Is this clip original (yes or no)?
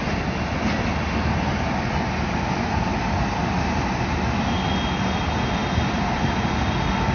yes